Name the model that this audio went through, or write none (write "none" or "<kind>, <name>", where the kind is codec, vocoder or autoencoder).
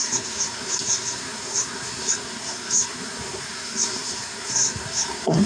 codec, SNAC